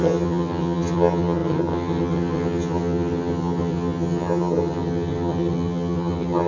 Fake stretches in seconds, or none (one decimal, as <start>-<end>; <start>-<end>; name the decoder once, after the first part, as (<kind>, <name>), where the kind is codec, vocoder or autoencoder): 0.0-6.5 (vocoder, HiFi-GAN)